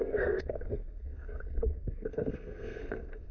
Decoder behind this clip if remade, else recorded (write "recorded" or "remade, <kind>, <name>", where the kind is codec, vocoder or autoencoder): remade, codec, SNAC